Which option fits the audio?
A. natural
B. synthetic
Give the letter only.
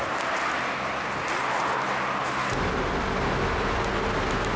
A